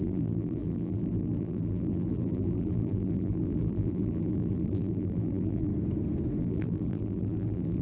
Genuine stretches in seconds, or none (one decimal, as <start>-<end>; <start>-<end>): 5.7-6.4